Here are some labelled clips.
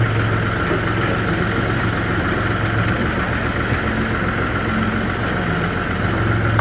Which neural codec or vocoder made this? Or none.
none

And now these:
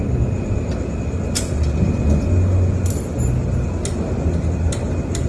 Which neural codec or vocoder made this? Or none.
none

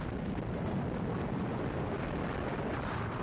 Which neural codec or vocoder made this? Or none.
none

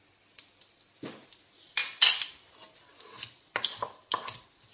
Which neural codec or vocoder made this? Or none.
none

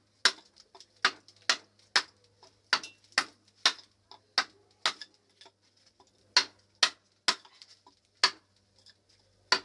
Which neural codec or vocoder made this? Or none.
none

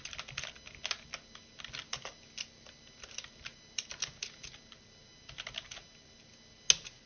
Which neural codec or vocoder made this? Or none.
none